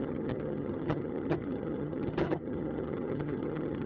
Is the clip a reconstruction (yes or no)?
yes